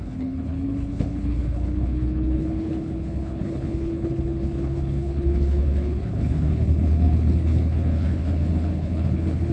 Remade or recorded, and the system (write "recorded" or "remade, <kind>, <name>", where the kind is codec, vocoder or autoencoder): remade, codec, HILCodec